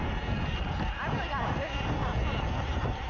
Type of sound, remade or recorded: recorded